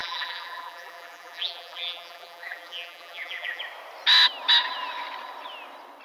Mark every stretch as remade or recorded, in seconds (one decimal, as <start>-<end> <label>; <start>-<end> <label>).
0.0-3.6 remade; 3.6-6.0 recorded